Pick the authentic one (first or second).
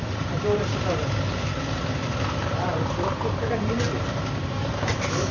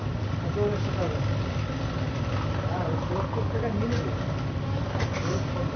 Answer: second